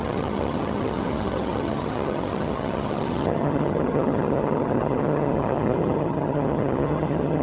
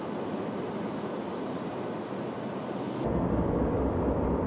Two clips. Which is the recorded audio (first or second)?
second